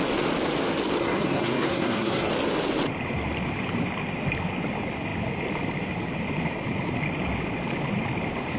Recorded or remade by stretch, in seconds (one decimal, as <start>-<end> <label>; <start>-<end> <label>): 0.0-1.0 recorded; 1.0-2.3 remade; 2.3-8.6 recorded